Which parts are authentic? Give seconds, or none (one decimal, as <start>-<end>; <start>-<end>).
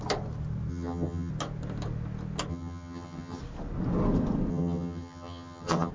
0.0-0.7; 1.3-2.5; 3.4-4.5